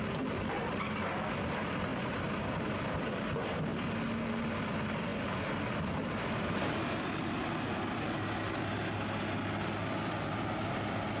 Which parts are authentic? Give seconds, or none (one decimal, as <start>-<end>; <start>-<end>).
0.0-1.9; 2.7-11.2